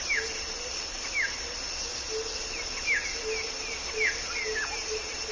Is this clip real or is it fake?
real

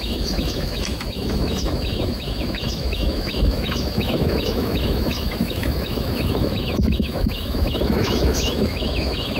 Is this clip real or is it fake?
fake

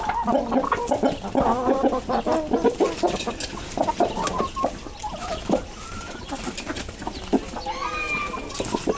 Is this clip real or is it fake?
real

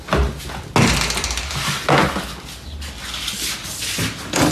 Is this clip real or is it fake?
real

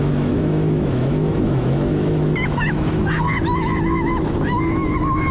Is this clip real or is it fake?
fake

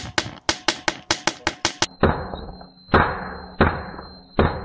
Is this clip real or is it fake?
real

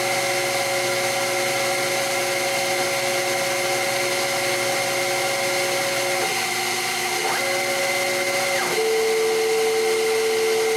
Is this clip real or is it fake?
real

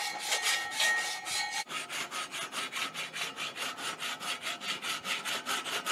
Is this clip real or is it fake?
real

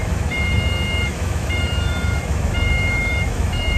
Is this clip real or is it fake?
fake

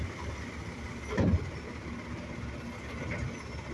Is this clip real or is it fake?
real